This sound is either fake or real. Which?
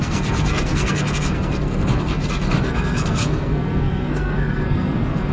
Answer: fake